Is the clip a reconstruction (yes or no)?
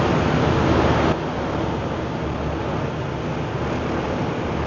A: no